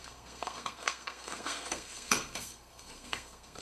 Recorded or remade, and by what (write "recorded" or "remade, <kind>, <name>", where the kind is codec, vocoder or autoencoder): remade, codec, SNAC